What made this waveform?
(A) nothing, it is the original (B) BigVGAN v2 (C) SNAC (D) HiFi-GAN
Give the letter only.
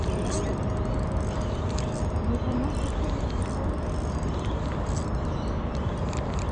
A